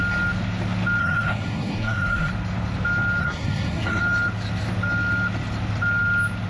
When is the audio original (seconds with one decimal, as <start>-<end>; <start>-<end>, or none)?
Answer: 0.0-1.0; 2.3-3.2; 4.0-6.5

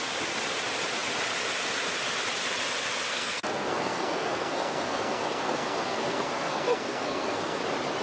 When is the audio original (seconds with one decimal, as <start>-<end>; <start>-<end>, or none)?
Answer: 0.0-3.1; 7.6-8.0

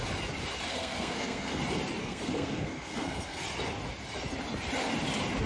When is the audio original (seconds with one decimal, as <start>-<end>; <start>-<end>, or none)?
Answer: 0.0-0.7; 1.6-2.0; 3.4-5.5

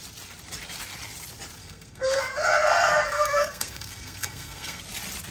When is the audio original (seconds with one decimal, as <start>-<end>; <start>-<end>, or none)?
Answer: 0.0-1.6; 4.8-5.3

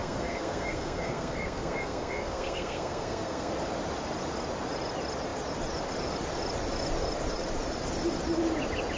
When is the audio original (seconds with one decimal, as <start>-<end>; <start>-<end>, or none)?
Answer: 3.5-9.0

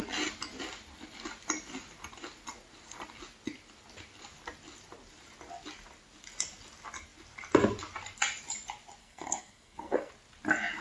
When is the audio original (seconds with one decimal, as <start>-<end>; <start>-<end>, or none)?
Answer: 0.0-9.0; 10.1-10.8